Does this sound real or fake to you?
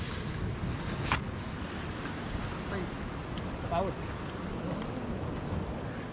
real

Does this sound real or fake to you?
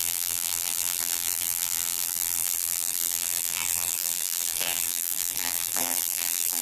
fake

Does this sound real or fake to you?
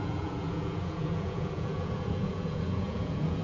fake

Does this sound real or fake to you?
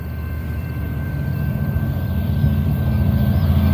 fake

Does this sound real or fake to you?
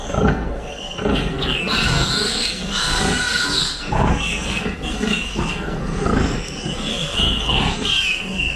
fake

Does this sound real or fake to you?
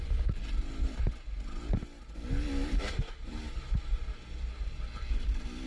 real